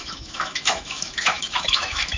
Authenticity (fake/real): fake